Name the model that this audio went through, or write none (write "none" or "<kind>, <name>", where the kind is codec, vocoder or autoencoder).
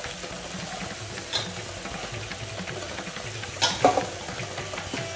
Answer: none